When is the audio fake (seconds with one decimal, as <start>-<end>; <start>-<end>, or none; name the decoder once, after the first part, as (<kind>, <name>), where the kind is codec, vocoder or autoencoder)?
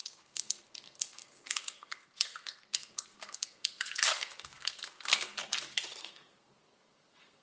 0.0-5.4 (codec, SNAC); 6.0-7.4